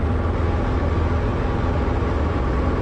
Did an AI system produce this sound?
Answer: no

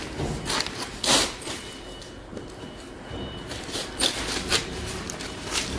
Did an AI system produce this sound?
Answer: yes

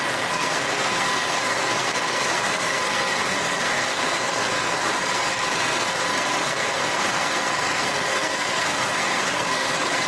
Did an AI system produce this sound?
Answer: yes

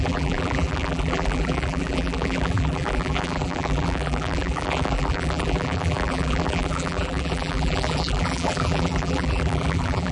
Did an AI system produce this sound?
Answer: yes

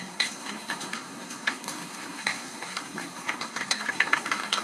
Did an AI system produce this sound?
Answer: yes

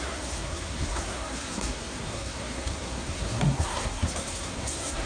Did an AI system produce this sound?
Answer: yes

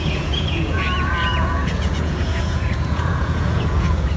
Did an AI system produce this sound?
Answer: yes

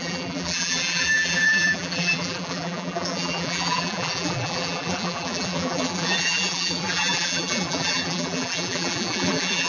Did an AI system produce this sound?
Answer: yes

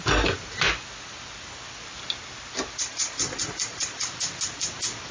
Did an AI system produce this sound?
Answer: no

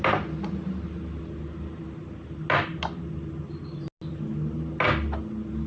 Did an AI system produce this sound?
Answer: no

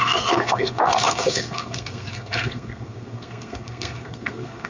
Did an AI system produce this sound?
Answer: yes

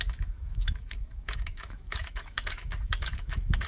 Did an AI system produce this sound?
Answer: yes